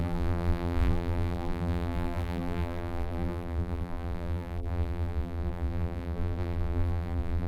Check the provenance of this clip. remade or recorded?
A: remade